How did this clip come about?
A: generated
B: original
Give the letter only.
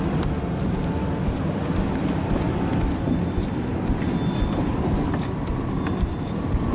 B